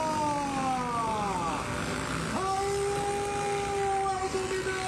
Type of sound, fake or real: real